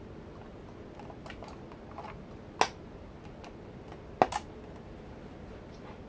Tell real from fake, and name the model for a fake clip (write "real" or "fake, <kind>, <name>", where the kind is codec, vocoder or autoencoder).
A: real